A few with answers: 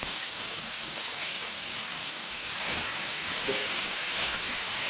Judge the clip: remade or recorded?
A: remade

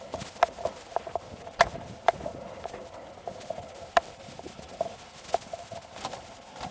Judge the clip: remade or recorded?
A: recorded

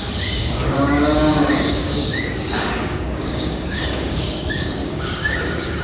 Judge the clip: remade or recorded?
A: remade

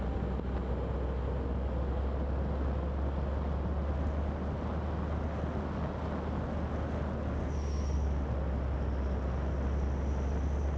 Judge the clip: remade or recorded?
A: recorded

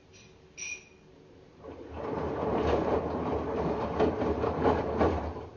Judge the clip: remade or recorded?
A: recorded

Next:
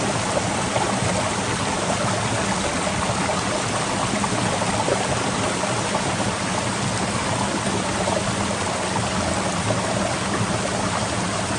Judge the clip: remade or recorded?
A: recorded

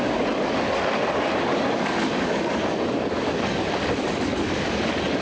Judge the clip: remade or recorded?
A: remade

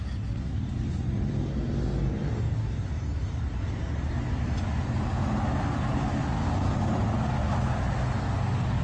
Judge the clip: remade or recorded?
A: recorded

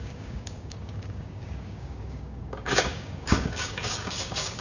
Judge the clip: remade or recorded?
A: remade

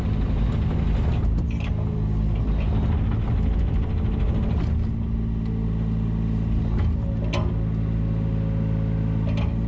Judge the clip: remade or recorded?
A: recorded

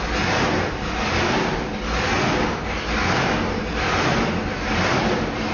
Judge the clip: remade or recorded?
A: recorded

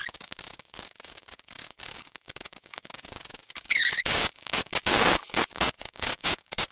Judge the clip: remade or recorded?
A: remade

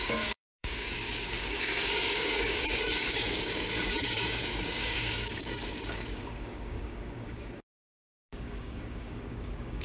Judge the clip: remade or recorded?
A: remade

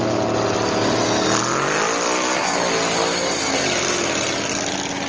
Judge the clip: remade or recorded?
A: recorded